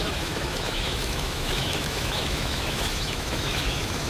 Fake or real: fake